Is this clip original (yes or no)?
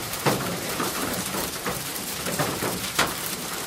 no